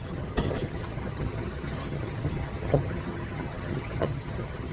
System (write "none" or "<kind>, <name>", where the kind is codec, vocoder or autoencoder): vocoder, HiFi-GAN